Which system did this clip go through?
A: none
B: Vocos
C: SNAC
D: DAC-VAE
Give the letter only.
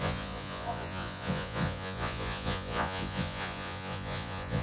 B